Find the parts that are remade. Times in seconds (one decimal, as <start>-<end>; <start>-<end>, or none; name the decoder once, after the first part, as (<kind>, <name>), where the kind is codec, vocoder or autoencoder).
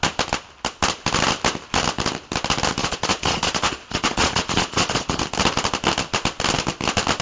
2.8-5.2 (vocoder, Vocos)